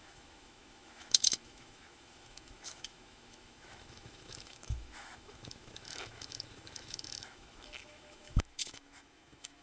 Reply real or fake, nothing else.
fake